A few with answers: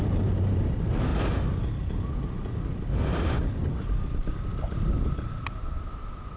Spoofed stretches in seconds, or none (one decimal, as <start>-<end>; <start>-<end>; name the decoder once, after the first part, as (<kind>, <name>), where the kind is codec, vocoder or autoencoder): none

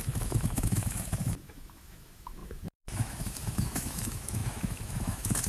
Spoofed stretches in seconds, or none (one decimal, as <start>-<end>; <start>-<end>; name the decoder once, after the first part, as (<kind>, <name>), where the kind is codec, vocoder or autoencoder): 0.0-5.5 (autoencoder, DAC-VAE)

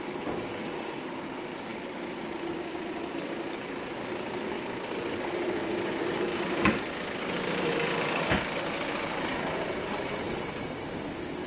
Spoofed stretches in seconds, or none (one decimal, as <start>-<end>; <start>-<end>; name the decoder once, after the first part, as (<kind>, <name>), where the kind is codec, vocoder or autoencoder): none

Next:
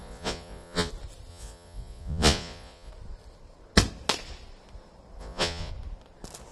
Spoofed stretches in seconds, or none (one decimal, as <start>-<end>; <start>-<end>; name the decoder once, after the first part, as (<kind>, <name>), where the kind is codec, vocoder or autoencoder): 0.0-0.9 (vocoder, Vocos); 1.3-2.9; 5.2-5.7